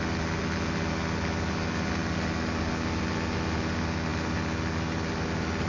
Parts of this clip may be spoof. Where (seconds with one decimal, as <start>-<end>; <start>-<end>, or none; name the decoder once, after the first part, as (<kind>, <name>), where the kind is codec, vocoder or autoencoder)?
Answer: none